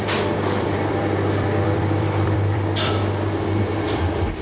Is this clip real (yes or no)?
no